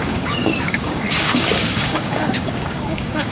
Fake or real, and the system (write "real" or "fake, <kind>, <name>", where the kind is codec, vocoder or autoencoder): fake, codec, DAC